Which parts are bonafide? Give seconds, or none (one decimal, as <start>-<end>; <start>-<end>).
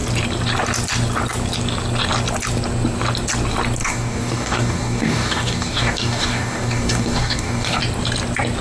0.0-3.8; 7.8-8.6